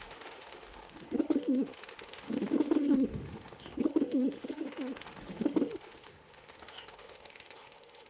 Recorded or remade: remade